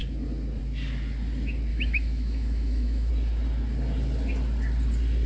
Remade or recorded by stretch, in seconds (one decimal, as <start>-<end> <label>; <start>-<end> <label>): 0.0-1.7 recorded; 1.7-3.1 remade; 3.1-5.3 recorded